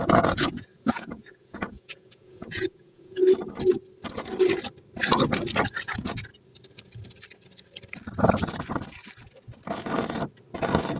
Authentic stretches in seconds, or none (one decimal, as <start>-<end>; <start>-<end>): 3.2-5.8; 6.3-11.0